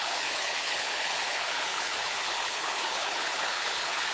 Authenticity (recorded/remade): remade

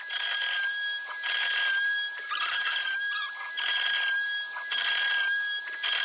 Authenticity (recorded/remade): recorded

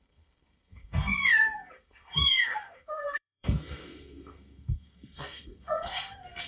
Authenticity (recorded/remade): remade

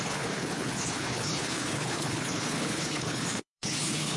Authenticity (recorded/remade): remade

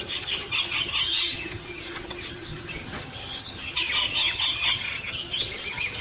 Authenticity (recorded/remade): remade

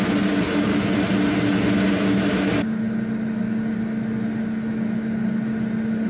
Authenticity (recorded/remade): recorded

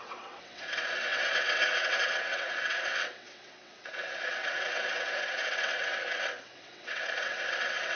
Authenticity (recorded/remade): remade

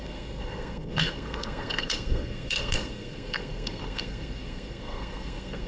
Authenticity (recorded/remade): remade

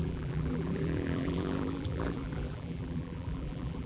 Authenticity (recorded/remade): remade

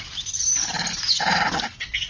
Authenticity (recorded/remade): recorded